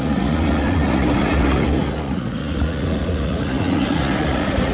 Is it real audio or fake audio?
fake